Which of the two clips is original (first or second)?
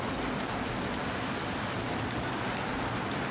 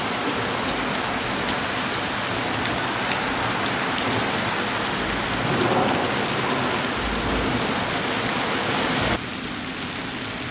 second